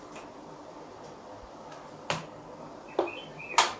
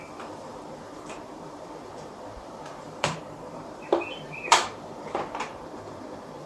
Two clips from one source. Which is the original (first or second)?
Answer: first